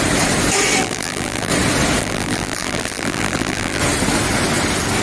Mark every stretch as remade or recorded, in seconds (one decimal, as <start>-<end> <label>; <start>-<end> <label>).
0.0-0.8 recorded; 0.8-1.5 remade; 1.5-2.0 recorded; 2.0-3.8 remade; 3.8-5.0 recorded